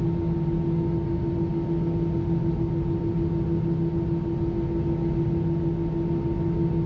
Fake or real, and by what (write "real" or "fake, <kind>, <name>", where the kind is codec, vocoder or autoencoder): real